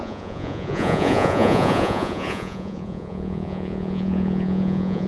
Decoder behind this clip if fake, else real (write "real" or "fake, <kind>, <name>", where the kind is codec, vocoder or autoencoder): fake, vocoder, Vocos